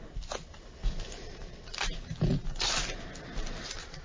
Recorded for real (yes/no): yes